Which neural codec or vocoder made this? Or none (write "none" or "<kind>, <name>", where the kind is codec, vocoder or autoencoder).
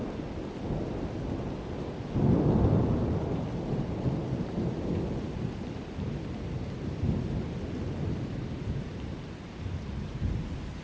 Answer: none